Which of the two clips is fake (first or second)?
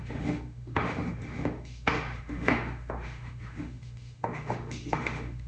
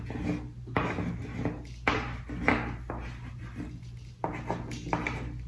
first